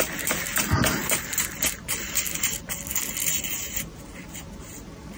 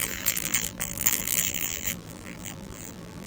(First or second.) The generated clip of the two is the second